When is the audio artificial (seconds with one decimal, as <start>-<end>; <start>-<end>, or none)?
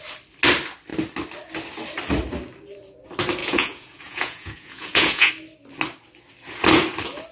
3.4-5.3